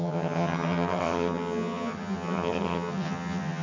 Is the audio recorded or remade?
remade